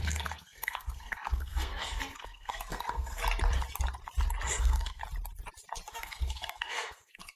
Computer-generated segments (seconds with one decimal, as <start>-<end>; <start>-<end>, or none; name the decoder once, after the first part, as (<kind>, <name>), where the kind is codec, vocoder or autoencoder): 0.0-3.2 (codec, SNAC); 4.6-5.0; 5.9-7.4